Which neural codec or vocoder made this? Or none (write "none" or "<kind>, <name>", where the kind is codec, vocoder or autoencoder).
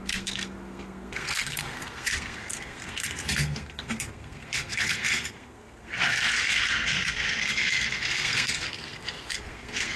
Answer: codec, SNAC